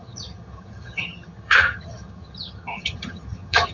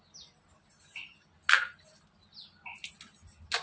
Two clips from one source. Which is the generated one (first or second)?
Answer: first